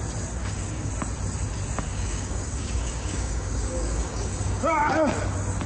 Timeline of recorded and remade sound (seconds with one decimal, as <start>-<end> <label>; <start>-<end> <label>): 0.0-0.4 recorded; 0.4-0.9 remade; 0.9-1.9 recorded; 1.9-4.9 remade; 4.9-5.7 recorded